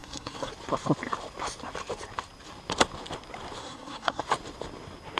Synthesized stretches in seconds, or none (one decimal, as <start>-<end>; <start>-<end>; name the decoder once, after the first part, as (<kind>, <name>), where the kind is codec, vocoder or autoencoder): 0.0-0.5 (codec, SNAC); 3.6-4.2